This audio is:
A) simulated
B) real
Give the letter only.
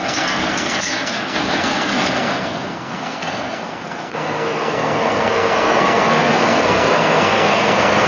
A